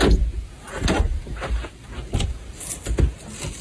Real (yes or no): yes